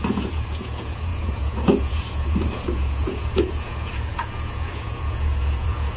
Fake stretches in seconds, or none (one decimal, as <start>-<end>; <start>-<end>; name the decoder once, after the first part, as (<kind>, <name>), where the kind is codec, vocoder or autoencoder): 0.0-6.0 (vocoder, Vocos)

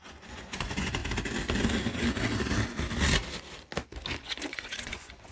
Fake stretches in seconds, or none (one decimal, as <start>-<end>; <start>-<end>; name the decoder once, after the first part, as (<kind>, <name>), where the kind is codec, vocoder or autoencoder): 0.0-1.0 (vocoder, Vocos); 4.2-5.3

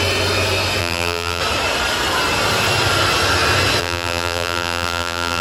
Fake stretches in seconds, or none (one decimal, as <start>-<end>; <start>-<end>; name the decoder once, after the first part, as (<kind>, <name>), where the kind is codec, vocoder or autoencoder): 0.8-1.4 (vocoder, BigVGAN v2); 3.8-5.4